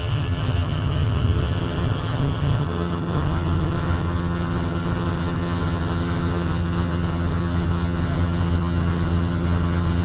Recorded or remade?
remade